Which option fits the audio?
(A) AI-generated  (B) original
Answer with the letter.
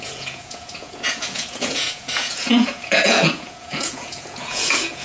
A